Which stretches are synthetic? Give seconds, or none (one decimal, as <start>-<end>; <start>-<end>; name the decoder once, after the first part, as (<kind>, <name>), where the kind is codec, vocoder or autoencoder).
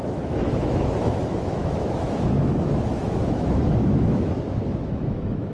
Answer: 0.0-5.5 (autoencoder, DAC-VAE)